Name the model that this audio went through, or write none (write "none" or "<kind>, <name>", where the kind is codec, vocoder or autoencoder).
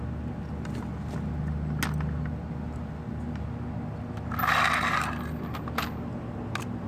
none